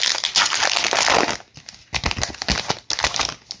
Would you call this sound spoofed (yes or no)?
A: no